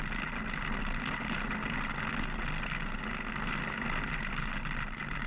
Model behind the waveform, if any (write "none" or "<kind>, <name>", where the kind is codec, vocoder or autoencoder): none